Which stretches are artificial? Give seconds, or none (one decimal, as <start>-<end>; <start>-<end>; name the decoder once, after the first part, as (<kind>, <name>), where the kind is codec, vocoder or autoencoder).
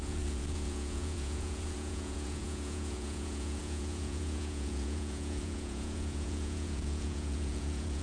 0.0-8.0 (vocoder, Vocos)